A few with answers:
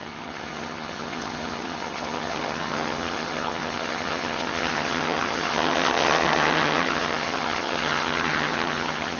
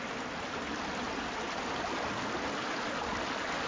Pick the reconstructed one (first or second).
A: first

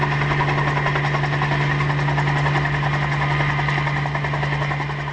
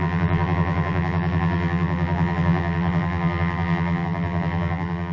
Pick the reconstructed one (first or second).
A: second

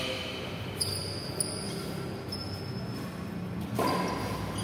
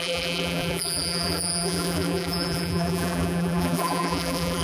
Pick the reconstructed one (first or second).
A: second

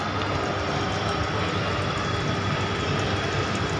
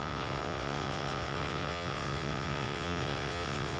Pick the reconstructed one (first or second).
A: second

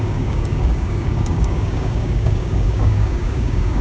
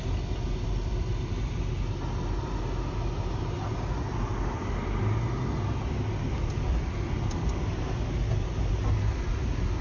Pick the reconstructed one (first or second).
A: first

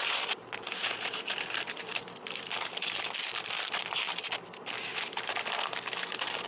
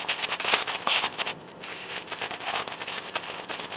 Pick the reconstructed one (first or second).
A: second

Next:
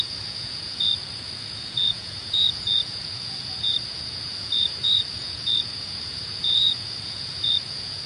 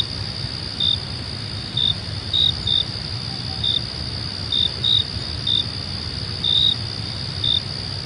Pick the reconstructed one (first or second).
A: first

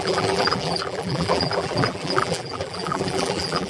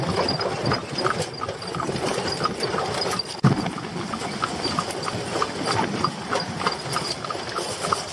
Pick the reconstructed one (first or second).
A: first